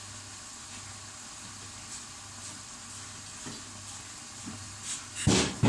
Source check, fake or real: real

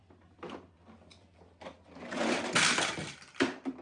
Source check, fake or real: fake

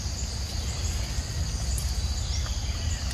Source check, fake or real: real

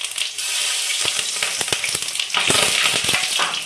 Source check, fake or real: real